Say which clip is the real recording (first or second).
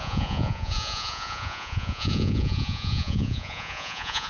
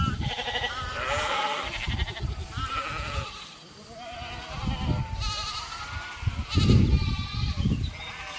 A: second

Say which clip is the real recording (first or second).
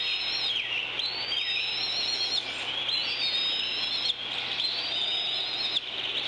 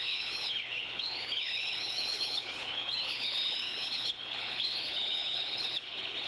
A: first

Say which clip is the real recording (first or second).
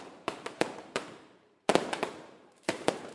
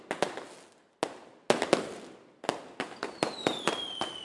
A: second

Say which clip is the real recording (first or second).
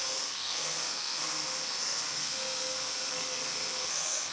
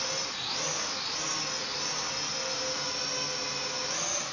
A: second